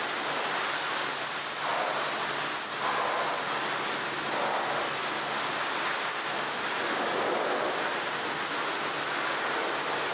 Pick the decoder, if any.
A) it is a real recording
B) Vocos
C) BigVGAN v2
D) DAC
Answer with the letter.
A